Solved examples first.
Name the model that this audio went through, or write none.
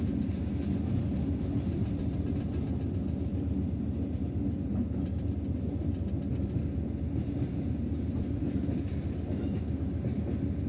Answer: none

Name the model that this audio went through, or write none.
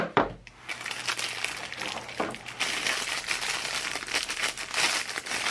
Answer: none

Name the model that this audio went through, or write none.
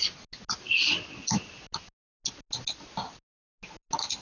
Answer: none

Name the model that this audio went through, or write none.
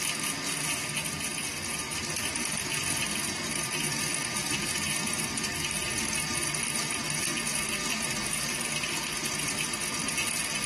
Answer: none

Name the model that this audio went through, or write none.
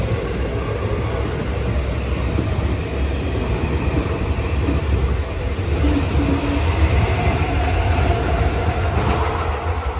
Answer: none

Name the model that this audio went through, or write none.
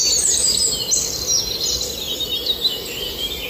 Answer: none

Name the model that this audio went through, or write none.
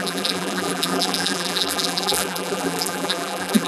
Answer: vocoder, BigVGAN v2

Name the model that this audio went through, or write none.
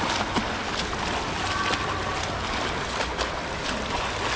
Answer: none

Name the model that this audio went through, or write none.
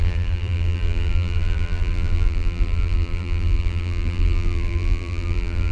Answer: vocoder, BigVGAN v2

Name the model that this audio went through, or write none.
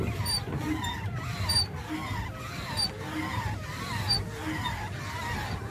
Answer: none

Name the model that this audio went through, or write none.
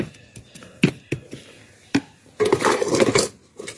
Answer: none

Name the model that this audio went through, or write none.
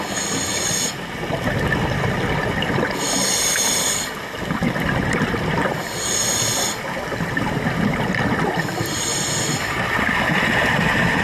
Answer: none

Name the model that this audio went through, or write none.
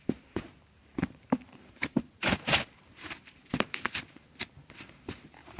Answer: vocoder, BigVGAN v2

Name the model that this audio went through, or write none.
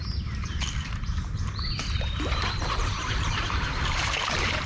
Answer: vocoder, BigVGAN v2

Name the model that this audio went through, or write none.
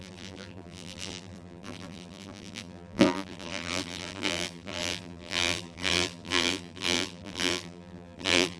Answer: vocoder, BigVGAN v2